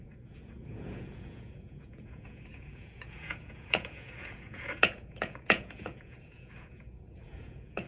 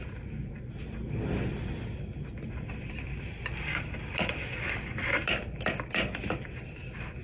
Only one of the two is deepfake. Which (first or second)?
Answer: first